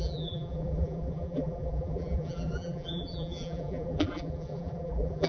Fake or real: fake